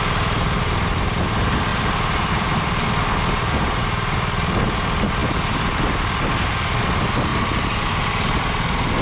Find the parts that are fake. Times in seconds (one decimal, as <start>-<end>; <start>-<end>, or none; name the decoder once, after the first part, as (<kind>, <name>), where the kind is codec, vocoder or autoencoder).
7.3-8.1 (vocoder, BigVGAN v2)